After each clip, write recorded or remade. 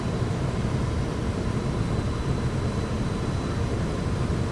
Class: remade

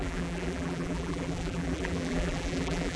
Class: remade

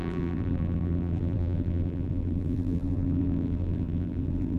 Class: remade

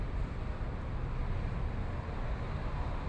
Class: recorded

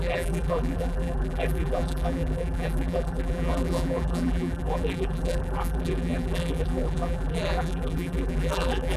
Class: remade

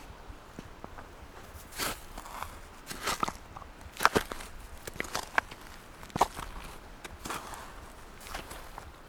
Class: recorded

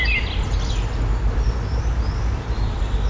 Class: recorded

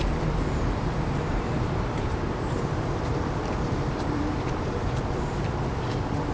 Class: remade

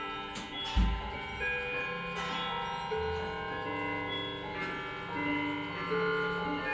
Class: recorded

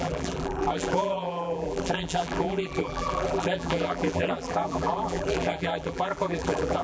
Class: remade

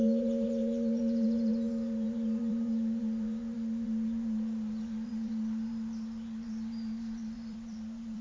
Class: remade